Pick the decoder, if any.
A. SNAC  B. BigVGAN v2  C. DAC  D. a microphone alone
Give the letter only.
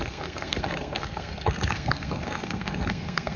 A